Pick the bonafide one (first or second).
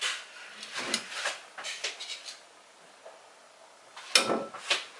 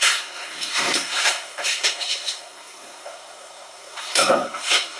first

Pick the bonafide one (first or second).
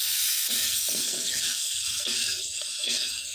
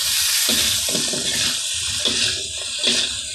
second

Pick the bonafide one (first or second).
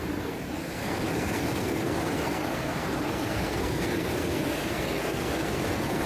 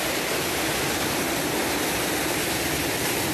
second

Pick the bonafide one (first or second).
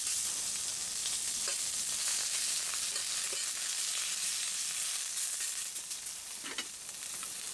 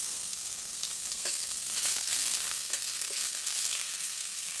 first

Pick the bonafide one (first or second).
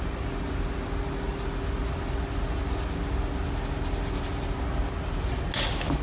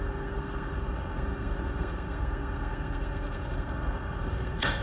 first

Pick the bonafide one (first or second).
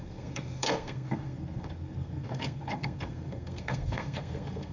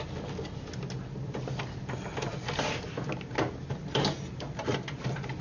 second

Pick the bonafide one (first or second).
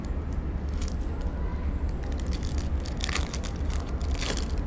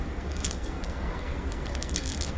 first